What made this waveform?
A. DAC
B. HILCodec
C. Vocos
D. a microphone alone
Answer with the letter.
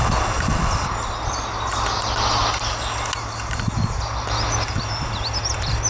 D